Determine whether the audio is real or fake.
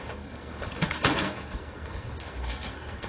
fake